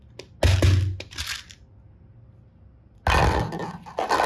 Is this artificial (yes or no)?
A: no